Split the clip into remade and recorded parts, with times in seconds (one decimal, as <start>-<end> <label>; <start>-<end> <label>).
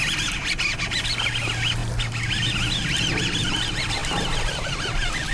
0.0-5.3 recorded